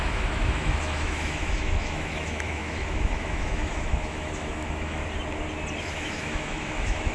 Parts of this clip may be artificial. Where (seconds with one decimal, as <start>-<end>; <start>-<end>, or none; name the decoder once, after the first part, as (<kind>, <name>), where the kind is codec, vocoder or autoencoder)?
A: 0.0-5.0 (autoencoder, DAC-VAE); 5.8-7.1